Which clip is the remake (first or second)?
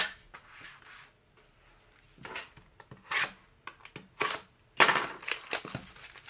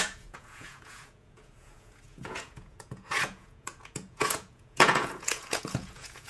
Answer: second